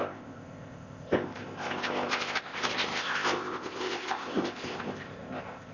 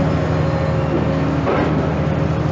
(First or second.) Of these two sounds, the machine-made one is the first